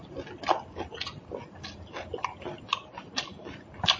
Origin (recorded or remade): recorded